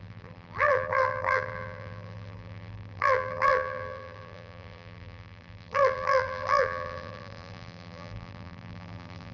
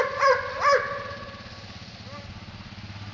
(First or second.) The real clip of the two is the second